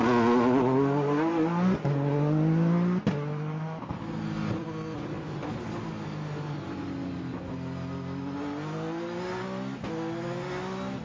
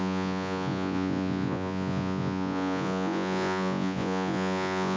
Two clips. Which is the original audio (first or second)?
first